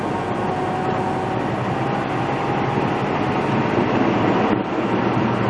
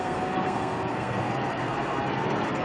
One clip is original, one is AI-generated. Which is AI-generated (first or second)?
second